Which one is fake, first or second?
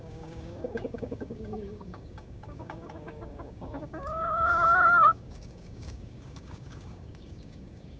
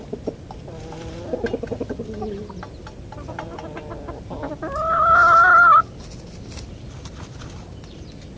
first